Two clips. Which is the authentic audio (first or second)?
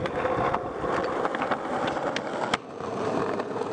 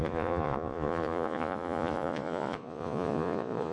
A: first